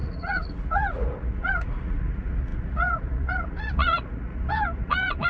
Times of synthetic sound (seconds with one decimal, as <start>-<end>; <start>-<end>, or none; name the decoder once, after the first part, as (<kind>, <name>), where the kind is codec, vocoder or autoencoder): 0.0-5.3 (vocoder, Vocos)

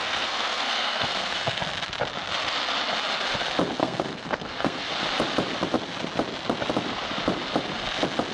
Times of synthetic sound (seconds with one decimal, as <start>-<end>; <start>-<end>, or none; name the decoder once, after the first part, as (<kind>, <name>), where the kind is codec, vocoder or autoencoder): 0.0-1.6 (codec, SNAC); 3.8-4.9

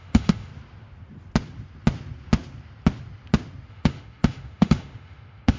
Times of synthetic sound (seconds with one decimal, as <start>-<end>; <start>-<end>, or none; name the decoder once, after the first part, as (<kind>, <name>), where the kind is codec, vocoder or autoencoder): 0.0-0.5 (autoencoder, DAC-VAE); 3.7-5.6

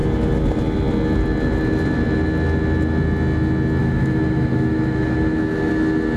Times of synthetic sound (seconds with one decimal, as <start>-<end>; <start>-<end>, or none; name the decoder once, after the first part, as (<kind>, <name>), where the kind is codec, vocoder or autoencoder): 3.8-5.7 (autoencoder, DAC-VAE)

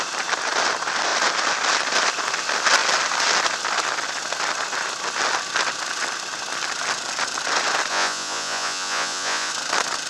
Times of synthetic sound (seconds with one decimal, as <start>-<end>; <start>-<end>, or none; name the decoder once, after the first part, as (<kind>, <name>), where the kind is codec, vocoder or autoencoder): 7.9-9.5 (vocoder, Vocos)

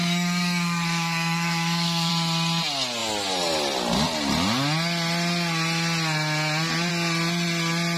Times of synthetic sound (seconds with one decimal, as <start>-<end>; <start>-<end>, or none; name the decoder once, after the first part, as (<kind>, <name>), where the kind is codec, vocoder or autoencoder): 0.0-2.1 (codec, DAC)